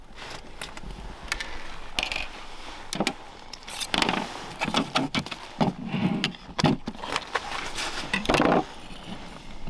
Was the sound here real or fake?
real